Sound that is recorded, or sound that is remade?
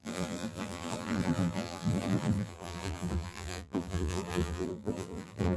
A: remade